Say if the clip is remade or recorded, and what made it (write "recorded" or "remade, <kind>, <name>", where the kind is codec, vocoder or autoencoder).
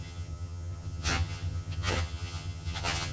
remade, vocoder, HiFi-GAN